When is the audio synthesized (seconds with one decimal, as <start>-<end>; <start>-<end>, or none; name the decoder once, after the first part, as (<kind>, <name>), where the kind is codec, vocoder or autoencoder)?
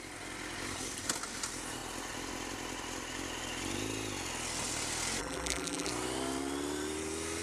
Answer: 5.2-5.9 (vocoder, BigVGAN v2)